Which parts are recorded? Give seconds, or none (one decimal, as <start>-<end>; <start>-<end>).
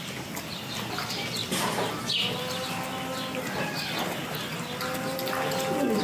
0.0-6.0